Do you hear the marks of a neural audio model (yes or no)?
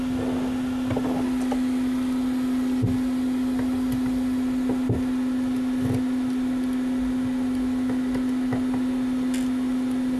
no